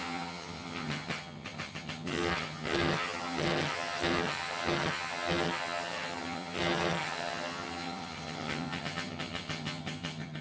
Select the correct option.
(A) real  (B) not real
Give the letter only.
B